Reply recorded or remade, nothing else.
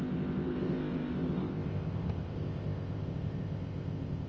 remade